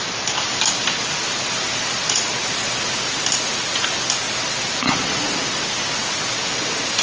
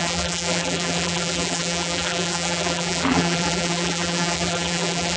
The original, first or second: first